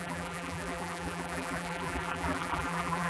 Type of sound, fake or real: fake